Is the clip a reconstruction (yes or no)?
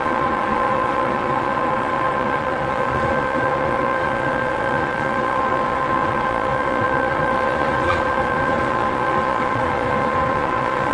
yes